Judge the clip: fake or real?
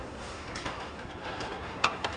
fake